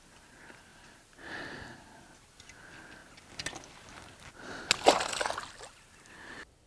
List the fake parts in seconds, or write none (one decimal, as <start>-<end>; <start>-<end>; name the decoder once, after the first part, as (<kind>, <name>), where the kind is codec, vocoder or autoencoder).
none